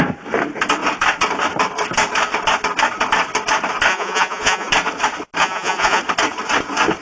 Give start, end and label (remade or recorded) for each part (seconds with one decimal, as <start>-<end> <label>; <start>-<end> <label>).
0.0-3.9 recorded; 3.9-4.7 remade; 4.7-5.4 recorded; 5.4-6.0 remade; 6.0-7.0 recorded